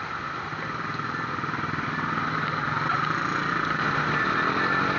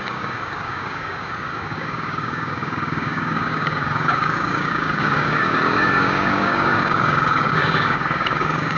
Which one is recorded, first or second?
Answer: first